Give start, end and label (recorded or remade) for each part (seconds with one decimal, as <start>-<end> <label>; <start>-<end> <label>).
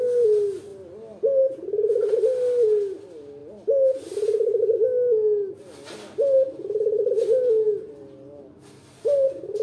0.0-9.6 recorded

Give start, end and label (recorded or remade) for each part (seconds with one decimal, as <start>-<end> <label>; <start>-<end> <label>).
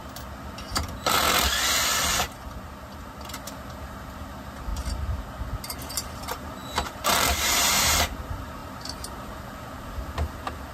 0.0-2.2 recorded; 2.2-4.7 remade; 4.7-5.9 recorded; 5.9-10.7 remade